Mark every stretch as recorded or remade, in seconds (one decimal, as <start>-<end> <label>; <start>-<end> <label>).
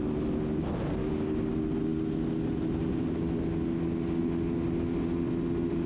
0.0-1.0 recorded; 1.0-1.5 remade; 1.5-5.9 recorded